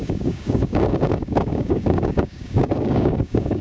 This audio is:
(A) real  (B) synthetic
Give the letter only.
B